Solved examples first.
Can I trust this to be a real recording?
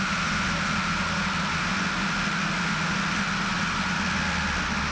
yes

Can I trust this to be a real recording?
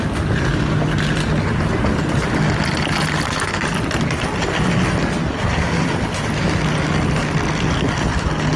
yes